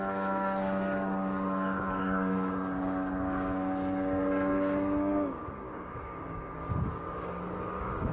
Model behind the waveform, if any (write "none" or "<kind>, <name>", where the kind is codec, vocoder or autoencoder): codec, DAC